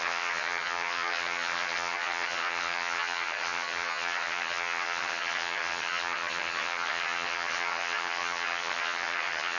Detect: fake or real fake